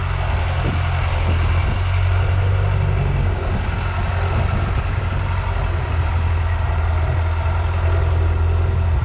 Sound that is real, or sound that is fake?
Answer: real